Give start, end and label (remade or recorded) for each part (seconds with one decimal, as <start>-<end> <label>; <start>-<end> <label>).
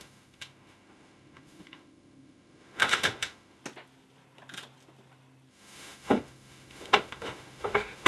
0.0-3.6 remade; 3.6-5.5 recorded; 5.5-8.1 remade